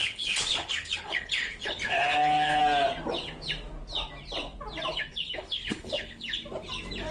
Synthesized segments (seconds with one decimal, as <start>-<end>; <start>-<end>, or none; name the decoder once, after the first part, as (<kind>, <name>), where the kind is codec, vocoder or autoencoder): 0.0-2.6 (codec, HILCodec); 4.9-6.4